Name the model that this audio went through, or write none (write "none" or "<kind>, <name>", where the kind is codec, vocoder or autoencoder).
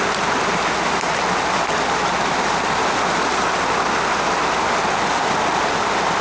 none